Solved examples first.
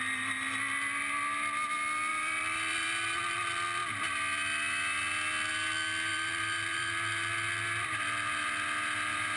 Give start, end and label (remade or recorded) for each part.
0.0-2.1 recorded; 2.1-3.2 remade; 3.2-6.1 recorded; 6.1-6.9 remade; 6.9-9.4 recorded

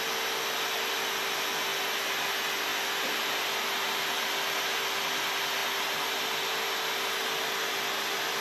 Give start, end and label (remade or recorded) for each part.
0.0-8.4 recorded

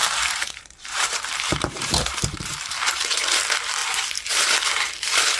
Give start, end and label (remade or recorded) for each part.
0.0-3.2 remade; 3.2-5.4 recorded